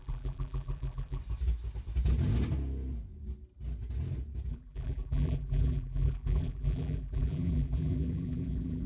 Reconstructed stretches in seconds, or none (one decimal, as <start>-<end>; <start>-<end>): 0.0-1.2; 4.5-8.9